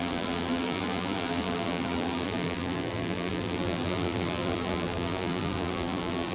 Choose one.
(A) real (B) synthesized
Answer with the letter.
B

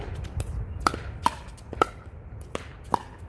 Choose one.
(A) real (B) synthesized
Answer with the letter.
B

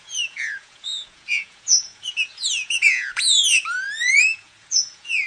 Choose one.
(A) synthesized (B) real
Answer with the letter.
A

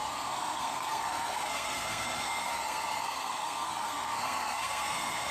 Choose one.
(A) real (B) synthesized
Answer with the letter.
B